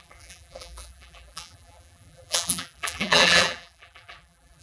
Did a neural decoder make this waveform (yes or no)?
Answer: yes